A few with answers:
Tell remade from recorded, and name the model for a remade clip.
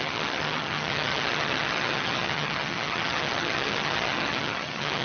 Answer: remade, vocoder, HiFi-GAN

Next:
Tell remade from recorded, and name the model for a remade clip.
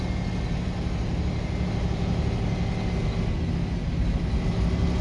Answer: recorded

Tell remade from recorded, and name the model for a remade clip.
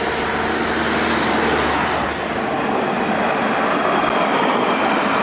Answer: recorded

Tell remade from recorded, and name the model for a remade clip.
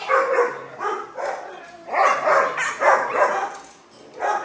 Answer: recorded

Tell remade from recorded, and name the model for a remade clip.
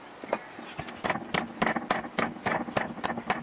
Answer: recorded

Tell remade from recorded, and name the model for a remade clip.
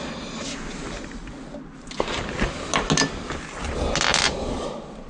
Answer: recorded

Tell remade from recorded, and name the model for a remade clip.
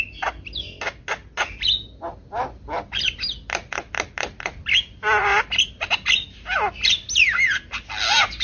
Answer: recorded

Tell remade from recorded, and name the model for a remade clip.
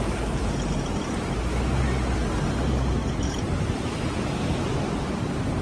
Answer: recorded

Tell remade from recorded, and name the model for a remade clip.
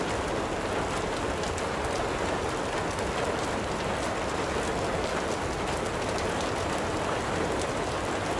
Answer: recorded